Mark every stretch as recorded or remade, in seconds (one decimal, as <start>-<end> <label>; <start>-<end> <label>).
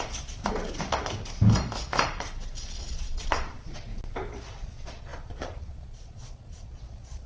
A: 0.0-0.4 remade; 0.4-2.8 recorded; 2.8-3.9 remade; 3.9-4.4 recorded; 4.4-7.3 remade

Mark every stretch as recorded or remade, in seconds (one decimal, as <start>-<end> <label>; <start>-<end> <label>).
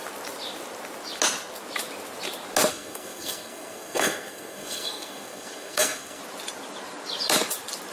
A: 0.0-2.7 recorded; 2.7-6.2 remade; 6.2-7.9 recorded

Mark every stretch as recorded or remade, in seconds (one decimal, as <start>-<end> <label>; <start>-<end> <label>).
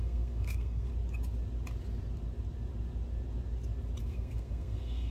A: 0.0-0.9 remade; 0.9-4.0 recorded; 4.0-5.1 remade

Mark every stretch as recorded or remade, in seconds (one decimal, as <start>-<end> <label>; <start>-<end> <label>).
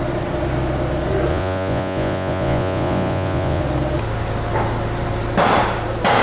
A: 0.0-1.3 recorded; 1.3-3.6 remade; 3.6-6.2 recorded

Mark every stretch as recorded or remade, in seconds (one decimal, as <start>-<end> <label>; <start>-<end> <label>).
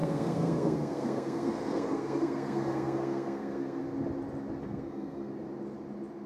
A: 0.0-3.8 remade; 3.8-4.6 recorded; 4.6-5.3 remade; 5.3-6.3 recorded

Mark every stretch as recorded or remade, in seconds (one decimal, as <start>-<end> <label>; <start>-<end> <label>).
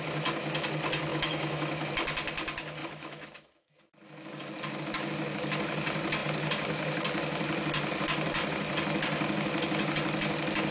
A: 0.0-1.1 recorded; 1.1-1.9 remade; 1.9-2.8 recorded; 2.8-3.8 remade; 3.8-10.7 recorded